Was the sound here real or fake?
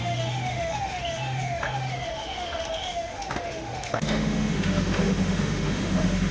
fake